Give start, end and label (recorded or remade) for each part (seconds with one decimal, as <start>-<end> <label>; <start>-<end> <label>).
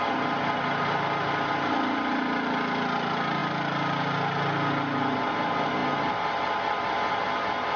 0.0-7.8 recorded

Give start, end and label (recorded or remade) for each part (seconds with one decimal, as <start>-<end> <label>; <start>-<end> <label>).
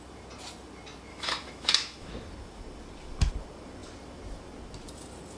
0.0-1.1 recorded; 1.1-2.1 remade; 2.1-5.4 recorded